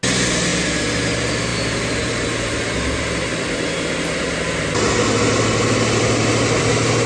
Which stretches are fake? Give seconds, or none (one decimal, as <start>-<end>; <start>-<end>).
none